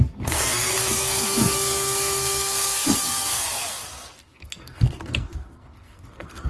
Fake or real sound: fake